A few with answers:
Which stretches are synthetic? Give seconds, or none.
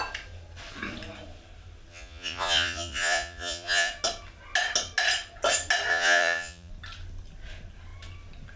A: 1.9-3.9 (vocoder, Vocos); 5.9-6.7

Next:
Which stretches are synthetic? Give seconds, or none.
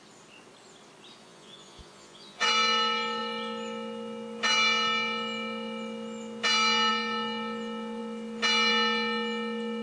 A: 1.2-2.5 (vocoder, Vocos)